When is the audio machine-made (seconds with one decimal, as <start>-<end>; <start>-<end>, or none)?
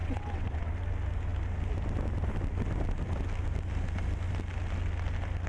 0.0-0.7